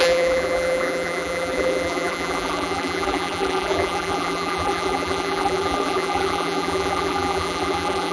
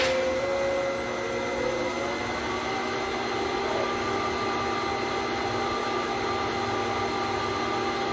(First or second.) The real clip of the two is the second